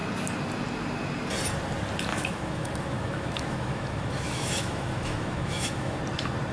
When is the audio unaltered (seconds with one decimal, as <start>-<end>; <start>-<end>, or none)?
0.0-2.1; 6.0-6.5